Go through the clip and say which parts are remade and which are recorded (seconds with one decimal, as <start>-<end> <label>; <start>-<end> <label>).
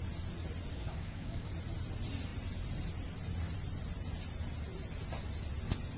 0.0-0.7 recorded; 0.7-1.5 remade; 1.5-6.0 recorded